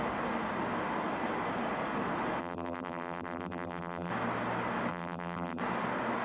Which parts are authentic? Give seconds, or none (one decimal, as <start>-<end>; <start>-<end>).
0.0-2.4; 4.1-4.9; 5.6-6.2